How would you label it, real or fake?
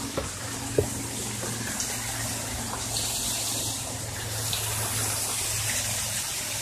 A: real